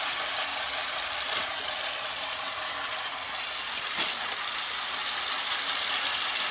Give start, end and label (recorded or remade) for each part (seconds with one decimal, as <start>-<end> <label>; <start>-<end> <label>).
0.0-6.5 recorded